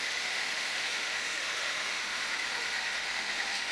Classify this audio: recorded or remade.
remade